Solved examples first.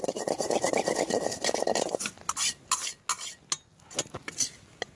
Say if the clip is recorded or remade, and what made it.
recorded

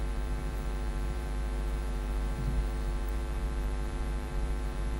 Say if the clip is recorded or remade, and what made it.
remade, vocoder, BigVGAN v2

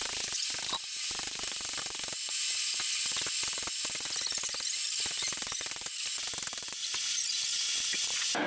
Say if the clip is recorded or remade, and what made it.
recorded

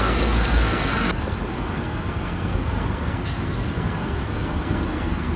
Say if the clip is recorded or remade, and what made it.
remade, codec, SNAC